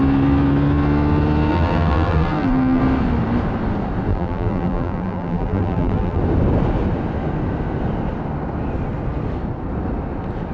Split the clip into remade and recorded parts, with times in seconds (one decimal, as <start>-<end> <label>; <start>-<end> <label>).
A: 0.0-1.5 recorded; 1.5-2.8 remade; 2.8-4.1 recorded; 4.1-6.2 remade; 6.2-10.5 recorded